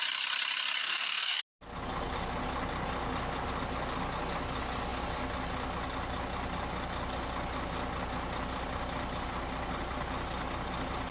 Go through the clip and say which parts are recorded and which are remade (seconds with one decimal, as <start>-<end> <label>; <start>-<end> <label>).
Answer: 0.0-0.8 recorded; 0.8-1.4 remade; 1.4-11.1 recorded